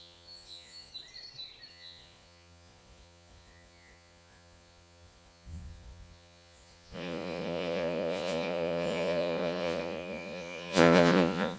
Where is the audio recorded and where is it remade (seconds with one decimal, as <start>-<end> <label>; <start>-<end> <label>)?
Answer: 0.0-0.9 remade; 0.9-1.7 recorded; 1.7-11.6 remade